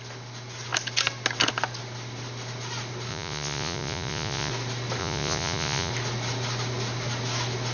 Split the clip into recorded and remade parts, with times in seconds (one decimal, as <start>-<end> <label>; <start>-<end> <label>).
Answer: 0.0-3.1 recorded; 3.1-4.5 remade; 4.5-5.0 recorded; 5.0-5.9 remade; 5.9-7.7 recorded